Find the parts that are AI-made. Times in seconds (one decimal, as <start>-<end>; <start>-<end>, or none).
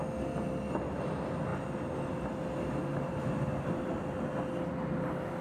none